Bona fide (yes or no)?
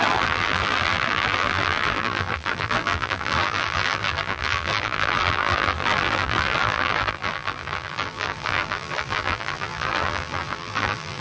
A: no